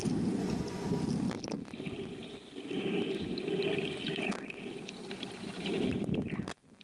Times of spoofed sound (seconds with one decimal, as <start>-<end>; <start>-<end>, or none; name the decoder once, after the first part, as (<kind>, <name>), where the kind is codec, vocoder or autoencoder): 0.4-1.0 (vocoder, Vocos)